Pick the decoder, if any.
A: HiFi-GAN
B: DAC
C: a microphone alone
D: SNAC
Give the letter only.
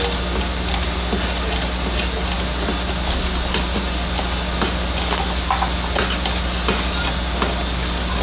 C